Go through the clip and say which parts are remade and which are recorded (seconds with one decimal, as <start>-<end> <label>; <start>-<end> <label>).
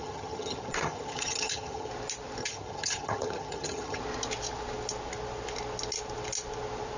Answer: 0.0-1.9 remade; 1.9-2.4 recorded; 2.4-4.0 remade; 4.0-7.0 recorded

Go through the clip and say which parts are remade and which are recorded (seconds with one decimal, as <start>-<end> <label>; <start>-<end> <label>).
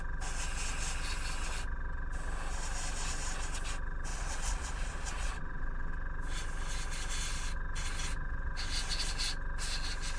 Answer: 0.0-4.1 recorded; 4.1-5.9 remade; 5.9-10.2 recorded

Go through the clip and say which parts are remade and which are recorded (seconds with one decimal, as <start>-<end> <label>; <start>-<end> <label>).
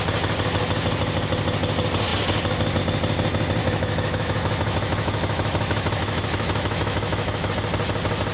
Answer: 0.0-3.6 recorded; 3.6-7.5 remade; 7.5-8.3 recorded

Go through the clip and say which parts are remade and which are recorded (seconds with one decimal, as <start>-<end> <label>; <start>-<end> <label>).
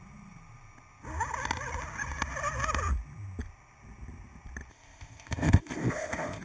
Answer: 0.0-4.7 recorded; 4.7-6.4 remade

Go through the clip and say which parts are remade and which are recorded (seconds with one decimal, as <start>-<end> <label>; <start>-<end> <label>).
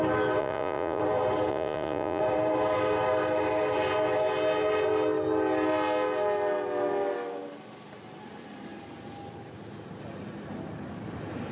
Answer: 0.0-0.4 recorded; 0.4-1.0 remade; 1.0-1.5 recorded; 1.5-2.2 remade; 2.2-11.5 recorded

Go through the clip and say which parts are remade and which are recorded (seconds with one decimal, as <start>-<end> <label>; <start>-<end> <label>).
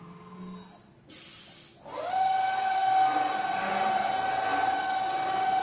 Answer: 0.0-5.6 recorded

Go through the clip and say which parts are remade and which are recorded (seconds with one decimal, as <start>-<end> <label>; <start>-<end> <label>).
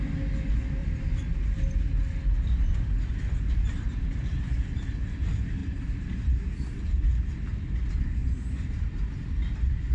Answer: 0.0-0.8 recorded; 0.8-1.6 remade; 1.6-5.6 recorded; 5.6-6.9 remade; 6.9-8.2 recorded; 8.2-8.7 remade; 8.7-9.9 recorded